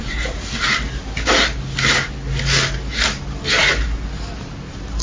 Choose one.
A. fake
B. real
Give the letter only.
B